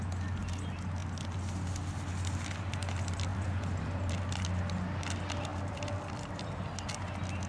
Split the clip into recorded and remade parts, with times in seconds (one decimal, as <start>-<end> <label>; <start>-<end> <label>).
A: 0.0-3.3 recorded; 3.3-4.1 remade; 4.1-5.5 recorded; 5.5-6.4 remade; 6.4-7.5 recorded